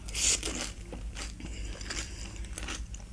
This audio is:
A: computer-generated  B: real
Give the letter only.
B